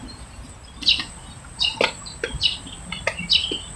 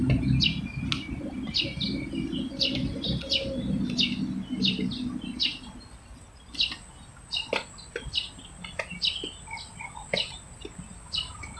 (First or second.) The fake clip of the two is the first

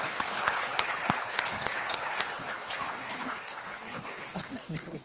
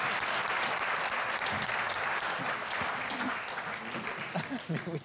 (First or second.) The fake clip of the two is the first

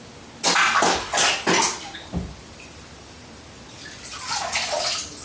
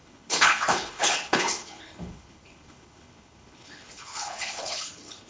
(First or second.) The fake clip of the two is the second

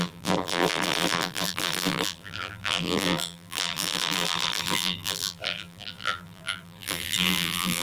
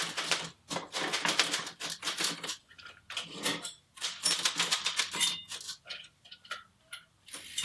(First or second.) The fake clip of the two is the first